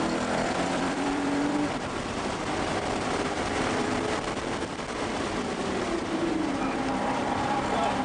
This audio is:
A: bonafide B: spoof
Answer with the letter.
B